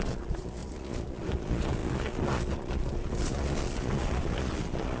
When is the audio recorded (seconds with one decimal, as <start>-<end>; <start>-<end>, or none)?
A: none